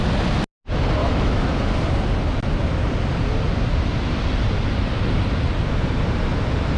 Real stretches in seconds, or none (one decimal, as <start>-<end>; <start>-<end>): 0.0-1.0; 1.6-6.8